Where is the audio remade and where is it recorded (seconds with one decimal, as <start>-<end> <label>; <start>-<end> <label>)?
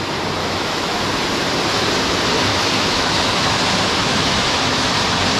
0.0-0.4 recorded; 0.4-1.0 remade; 1.0-2.5 recorded; 2.5-3.5 remade; 3.5-4.0 recorded; 4.0-4.9 remade; 4.9-5.4 recorded